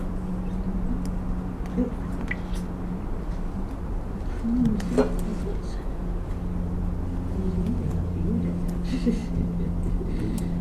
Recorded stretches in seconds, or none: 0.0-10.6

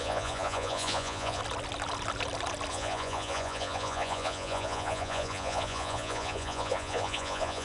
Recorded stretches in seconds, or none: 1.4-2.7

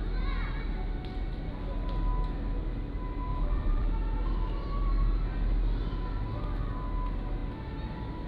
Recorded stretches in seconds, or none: 0.0-3.3; 3.9-8.3

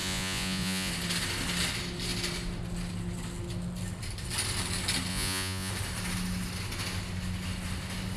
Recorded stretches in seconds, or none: 0.9-5.1; 5.7-8.2

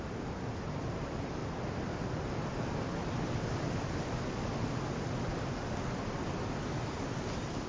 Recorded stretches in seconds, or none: 0.0-7.7